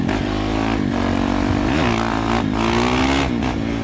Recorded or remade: recorded